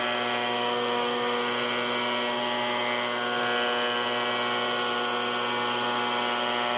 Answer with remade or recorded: recorded